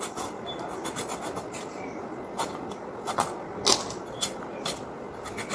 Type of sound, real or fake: real